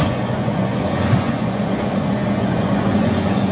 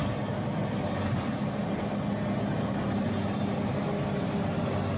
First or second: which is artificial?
first